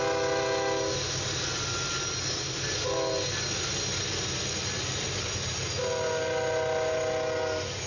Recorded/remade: recorded